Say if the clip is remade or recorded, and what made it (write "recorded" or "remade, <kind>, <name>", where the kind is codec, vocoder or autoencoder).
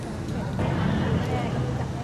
recorded